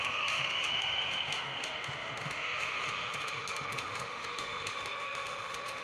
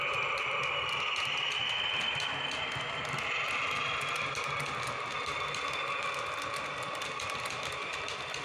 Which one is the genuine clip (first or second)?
second